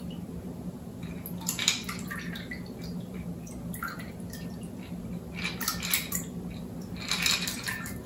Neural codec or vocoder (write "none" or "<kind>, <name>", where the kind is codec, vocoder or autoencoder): none